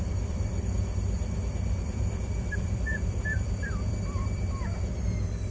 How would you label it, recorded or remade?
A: remade